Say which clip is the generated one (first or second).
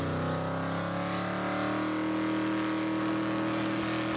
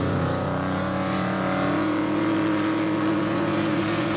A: second